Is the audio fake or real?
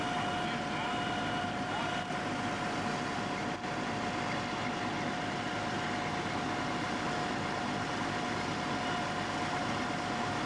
real